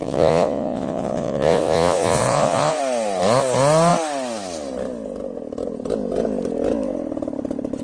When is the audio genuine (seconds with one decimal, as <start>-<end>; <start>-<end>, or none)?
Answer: 2.8-7.8